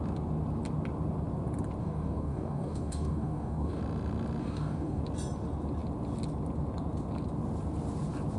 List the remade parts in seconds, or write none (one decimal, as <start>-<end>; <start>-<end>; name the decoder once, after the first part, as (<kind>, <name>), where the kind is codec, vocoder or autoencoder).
1.8-3.8 (codec, DAC); 4.4-5.0